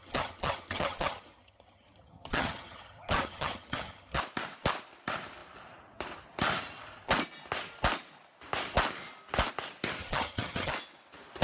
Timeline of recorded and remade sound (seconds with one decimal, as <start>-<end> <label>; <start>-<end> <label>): 0.0-4.2 remade; 4.2-10.0 recorded; 10.0-10.7 remade; 10.7-11.4 recorded